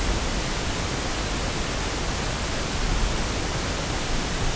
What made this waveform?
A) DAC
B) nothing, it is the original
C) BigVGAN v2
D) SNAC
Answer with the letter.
B